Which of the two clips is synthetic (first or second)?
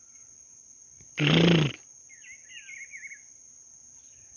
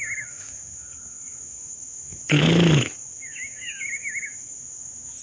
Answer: second